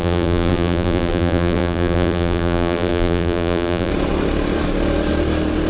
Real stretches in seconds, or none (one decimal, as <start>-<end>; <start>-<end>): 3.9-5.7